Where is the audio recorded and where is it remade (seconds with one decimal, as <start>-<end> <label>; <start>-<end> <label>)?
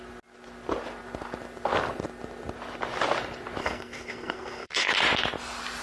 0.0-3.6 recorded; 3.6-4.9 remade; 4.9-5.8 recorded